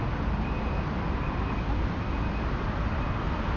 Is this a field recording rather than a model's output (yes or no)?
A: yes